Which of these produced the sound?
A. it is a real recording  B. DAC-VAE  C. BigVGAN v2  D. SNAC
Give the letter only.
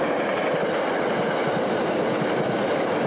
A